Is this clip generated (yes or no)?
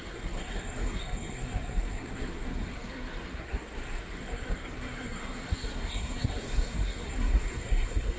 yes